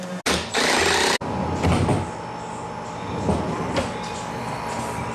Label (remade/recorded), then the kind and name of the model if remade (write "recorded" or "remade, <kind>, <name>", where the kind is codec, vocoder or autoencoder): recorded